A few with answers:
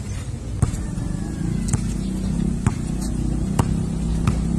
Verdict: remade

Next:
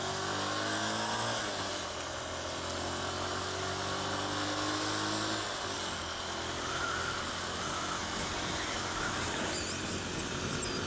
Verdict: recorded